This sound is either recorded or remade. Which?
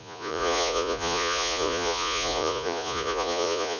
remade